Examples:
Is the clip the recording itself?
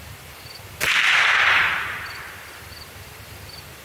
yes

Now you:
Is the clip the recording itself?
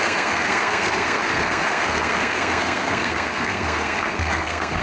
no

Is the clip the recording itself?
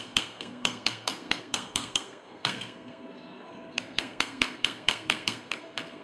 no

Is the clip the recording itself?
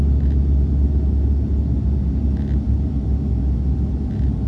yes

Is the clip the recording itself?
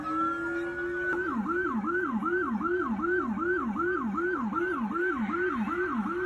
yes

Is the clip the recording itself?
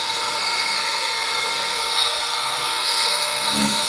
no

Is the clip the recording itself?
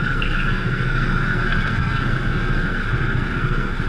no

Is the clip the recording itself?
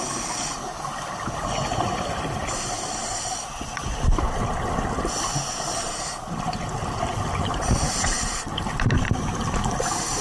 yes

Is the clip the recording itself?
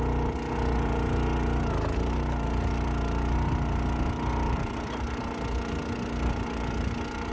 yes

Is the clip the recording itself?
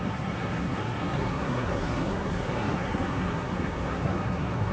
no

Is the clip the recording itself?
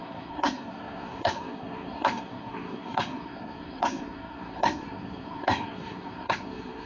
no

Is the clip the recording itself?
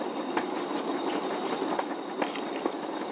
yes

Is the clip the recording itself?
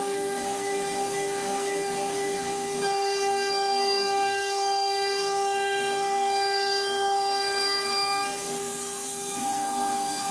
no